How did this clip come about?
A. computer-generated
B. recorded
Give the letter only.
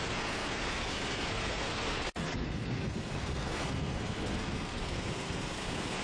A